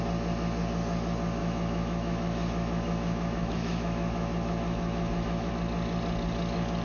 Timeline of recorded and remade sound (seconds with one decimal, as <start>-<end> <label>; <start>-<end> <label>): 0.0-1.4 recorded; 1.4-5.5 remade; 5.5-6.8 recorded